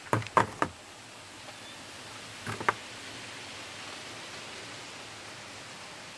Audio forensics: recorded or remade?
recorded